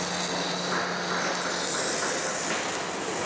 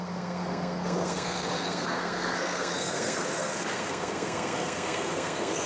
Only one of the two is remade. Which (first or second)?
second